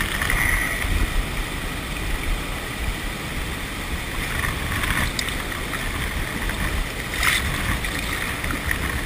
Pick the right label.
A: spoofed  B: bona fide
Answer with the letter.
B